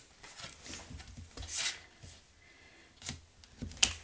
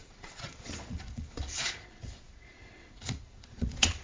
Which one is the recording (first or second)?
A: first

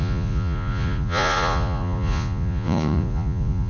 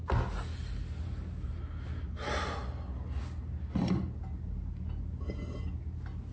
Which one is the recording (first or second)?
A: second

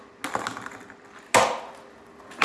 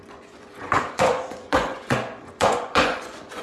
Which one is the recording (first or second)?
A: first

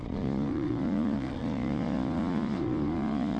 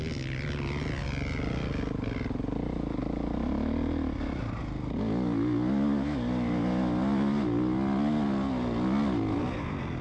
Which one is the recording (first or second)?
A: second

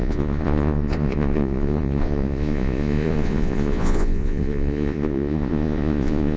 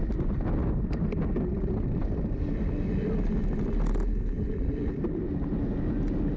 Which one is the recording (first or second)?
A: second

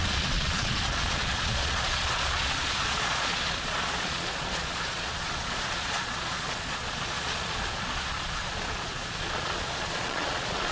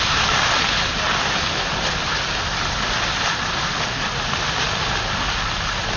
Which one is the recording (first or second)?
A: second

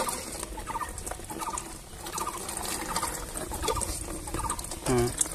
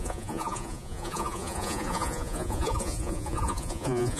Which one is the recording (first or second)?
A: first